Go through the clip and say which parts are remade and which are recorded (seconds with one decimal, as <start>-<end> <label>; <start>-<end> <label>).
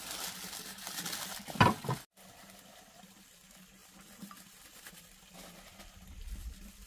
0.0-6.9 recorded